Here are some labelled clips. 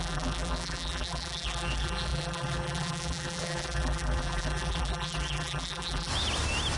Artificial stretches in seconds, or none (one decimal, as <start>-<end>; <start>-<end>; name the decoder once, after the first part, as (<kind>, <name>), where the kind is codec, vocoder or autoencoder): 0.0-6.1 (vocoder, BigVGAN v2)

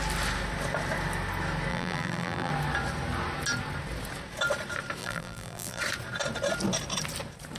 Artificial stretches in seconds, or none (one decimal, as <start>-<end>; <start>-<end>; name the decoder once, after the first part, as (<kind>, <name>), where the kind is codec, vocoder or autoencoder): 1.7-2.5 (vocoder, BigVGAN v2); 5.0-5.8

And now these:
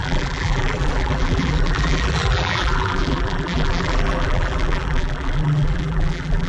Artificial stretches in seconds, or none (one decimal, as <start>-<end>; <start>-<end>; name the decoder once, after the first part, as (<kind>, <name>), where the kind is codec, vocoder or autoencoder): 0.0-6.5 (vocoder, BigVGAN v2)